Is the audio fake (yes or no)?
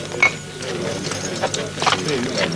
no